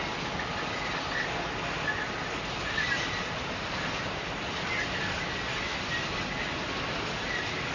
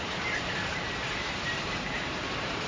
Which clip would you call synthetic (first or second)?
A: second